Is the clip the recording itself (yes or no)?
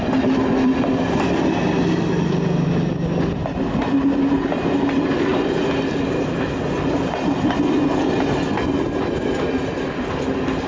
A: yes